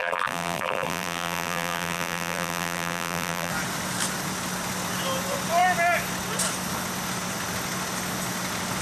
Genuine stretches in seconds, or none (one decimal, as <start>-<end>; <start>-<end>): 3.5-8.8